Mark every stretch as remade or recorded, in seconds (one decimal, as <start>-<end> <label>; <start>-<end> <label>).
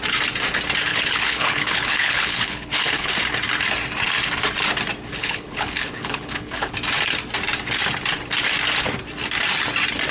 0.0-0.9 recorded; 0.9-3.1 remade; 3.1-5.2 recorded; 5.2-6.7 remade; 6.7-10.1 recorded